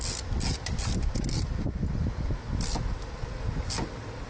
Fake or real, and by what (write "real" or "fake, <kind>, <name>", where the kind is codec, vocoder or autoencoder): real